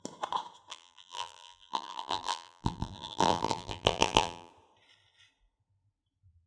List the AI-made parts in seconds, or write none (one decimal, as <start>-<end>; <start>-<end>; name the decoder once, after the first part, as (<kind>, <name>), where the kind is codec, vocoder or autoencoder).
0.7-4.5 (vocoder, BigVGAN v2)